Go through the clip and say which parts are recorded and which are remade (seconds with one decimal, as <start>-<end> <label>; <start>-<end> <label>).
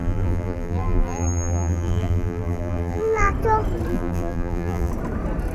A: 0.0-3.3 remade; 3.3-3.9 recorded; 3.9-4.9 remade; 4.9-5.5 recorded